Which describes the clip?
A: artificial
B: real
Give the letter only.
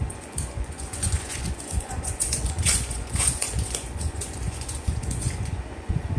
A